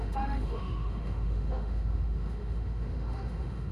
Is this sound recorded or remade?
remade